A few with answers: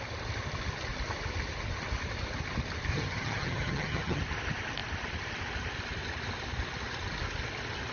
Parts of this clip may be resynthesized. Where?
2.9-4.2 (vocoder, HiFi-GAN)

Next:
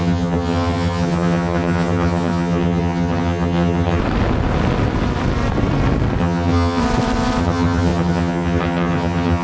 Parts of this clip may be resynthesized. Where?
0.0-4.0 (vocoder, HiFi-GAN); 6.2-6.8; 7.4-9.4

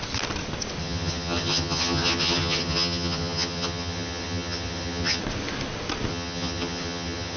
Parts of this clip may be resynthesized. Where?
0.8-5.2 (vocoder, HiFi-GAN); 6.1-7.4

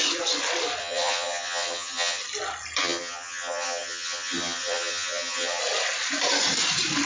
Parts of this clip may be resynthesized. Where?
0.8-2.2 (vocoder, HiFi-GAN); 2.8-5.6